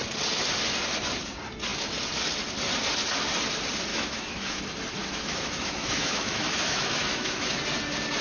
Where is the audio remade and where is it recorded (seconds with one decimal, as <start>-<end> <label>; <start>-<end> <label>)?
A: 0.0-3.9 recorded; 3.9-4.6 remade; 4.6-5.0 recorded; 5.0-7.6 remade; 7.6-8.2 recorded